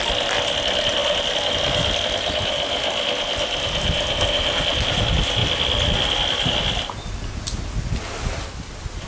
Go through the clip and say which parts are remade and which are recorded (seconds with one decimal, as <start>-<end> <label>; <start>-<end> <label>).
0.0-9.1 recorded